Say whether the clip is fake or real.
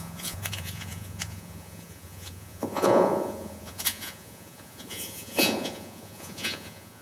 fake